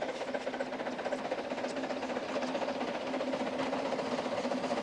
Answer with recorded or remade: recorded